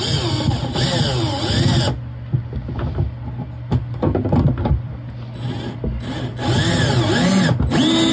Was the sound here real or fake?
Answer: real